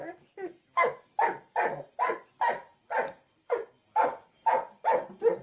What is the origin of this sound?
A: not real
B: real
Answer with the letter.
B